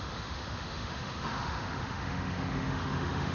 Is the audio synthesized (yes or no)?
yes